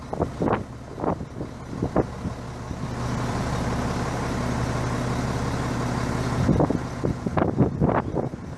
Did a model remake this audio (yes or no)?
no